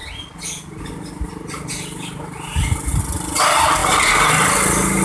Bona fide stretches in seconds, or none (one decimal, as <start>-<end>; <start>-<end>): 0.0-5.0